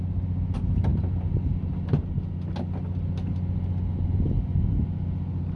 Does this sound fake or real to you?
real